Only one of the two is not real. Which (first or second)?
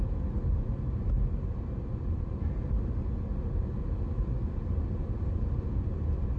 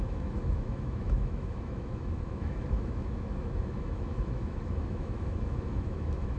second